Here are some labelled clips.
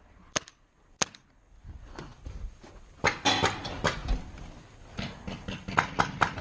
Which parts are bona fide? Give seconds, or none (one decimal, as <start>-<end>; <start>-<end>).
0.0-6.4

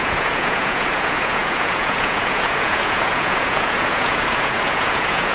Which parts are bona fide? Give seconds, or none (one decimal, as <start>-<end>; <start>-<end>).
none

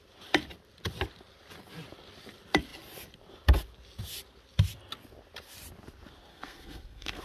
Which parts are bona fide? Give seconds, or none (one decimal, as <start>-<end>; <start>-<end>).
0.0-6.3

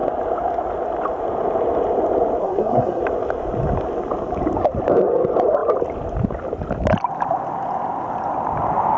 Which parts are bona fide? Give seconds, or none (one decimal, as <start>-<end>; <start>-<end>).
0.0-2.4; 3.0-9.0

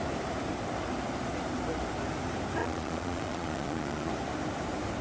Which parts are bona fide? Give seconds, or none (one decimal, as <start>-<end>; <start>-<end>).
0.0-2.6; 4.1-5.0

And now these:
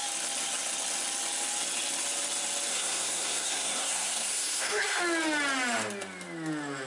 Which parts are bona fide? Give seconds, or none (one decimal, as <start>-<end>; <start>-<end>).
0.0-2.7; 5.0-6.9